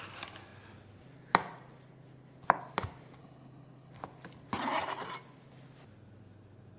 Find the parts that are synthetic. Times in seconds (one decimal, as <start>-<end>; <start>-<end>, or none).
3.2-3.9